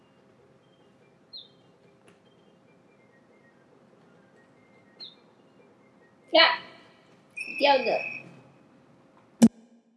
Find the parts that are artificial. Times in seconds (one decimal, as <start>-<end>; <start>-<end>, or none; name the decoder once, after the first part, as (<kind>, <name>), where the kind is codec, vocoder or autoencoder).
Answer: 6.3-8.4 (vocoder, BigVGAN v2)